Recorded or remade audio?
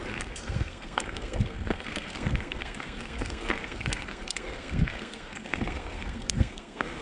remade